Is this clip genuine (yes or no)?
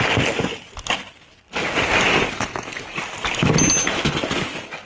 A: yes